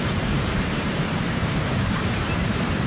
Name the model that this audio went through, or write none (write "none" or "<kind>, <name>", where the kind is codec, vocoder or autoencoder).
vocoder, BigVGAN v2